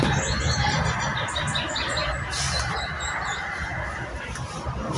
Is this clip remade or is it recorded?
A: recorded